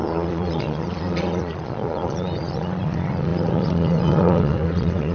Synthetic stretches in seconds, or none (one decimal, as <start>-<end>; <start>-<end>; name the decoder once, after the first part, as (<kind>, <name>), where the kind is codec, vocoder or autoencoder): 0.0-5.1 (vocoder, Vocos)